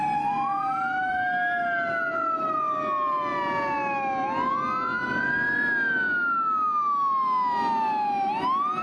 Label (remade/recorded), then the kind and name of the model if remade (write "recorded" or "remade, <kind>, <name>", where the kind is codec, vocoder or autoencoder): recorded